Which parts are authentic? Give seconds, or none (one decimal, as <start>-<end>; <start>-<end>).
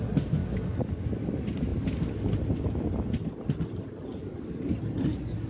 0.0-0.4; 1.2-5.5